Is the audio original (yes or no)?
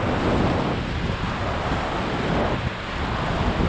yes